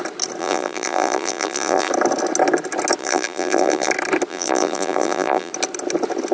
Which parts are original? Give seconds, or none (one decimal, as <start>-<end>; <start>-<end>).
0.0-0.4; 1.9-3.0; 3.9-4.3; 5.5-6.3